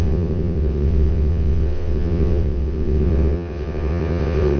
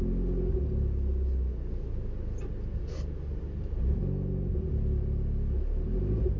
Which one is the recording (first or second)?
second